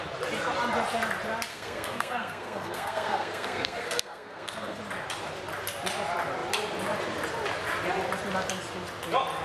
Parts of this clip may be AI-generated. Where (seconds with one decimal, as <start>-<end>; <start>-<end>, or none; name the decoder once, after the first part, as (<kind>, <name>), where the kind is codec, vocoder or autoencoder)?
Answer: 1.5-4.8 (codec, SNAC)

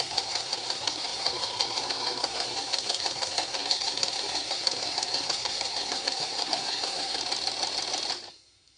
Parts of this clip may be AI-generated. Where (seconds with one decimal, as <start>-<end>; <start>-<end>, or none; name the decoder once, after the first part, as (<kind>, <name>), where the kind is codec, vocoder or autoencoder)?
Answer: 0.0-7.2 (codec, SNAC); 8.3-8.8

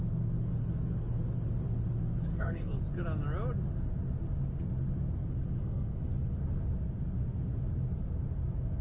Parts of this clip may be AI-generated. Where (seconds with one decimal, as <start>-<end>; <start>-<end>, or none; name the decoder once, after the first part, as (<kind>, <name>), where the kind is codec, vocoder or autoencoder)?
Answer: 2.3-2.8 (codec, SNAC); 5.6-6.1

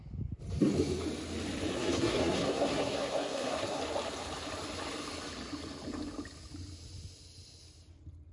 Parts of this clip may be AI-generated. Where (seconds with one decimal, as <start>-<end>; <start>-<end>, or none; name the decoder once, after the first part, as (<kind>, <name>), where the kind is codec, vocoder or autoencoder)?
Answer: 1.7-3.8 (codec, SNAC)

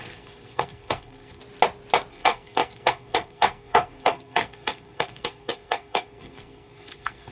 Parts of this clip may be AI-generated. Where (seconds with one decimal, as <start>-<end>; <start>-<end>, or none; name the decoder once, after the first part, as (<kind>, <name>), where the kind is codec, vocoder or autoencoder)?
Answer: 0.0-1.4 (codec, SNAC); 2.1-7.3

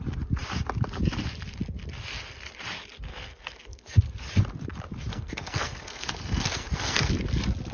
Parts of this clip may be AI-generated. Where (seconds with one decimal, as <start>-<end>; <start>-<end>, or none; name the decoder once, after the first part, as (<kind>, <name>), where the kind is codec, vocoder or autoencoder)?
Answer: 3.1-4.0 (codec, SNAC); 5.1-7.1

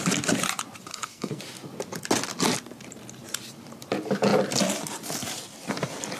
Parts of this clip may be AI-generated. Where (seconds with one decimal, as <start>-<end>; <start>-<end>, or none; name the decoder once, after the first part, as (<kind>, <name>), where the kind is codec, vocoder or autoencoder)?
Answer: 0.9-1.4 (codec, SNAC)

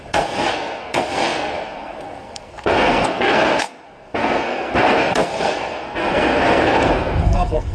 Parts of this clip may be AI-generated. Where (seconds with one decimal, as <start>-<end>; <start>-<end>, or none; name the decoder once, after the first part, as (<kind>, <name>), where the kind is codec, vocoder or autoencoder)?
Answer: 0.0-7.7 (codec, SNAC)